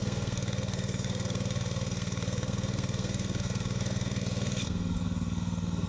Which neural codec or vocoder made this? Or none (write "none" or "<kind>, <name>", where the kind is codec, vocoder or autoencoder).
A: codec, SNAC